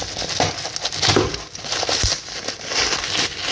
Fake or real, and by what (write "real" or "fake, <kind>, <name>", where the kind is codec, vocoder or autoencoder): real